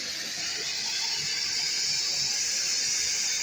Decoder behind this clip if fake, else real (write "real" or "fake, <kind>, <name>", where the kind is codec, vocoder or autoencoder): real